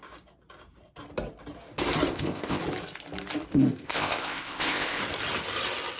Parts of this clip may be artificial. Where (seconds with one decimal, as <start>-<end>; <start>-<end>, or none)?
2.1-2.6; 3.5-5.0